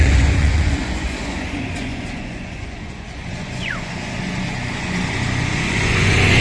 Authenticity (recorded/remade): remade